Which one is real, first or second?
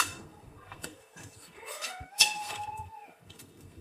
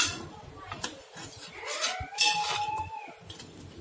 second